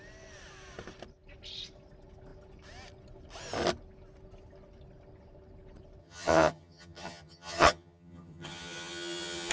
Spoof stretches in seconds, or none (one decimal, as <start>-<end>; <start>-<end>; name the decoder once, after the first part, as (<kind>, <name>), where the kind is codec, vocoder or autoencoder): 6.0-9.5 (vocoder, HiFi-GAN)